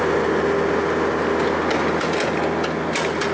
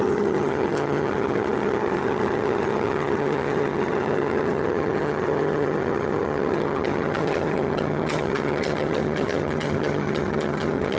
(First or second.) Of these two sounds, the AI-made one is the second